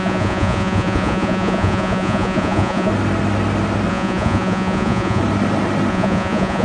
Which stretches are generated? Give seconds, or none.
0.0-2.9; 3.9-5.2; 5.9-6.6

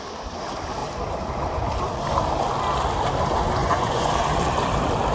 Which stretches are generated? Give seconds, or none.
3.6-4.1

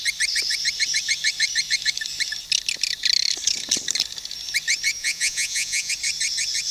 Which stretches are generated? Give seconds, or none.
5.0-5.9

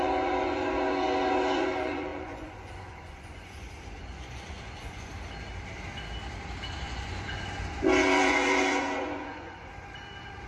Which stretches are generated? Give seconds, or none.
0.0-5.1; 6.8-9.7